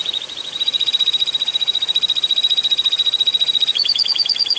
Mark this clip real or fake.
fake